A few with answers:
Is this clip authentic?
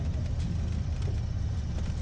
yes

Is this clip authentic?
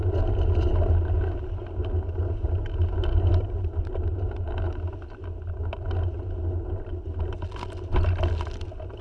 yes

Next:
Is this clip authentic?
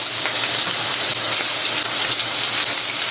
yes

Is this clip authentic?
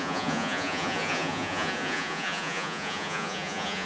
no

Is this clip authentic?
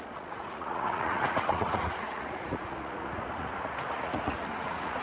no